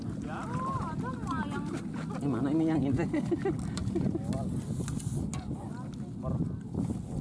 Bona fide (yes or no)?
yes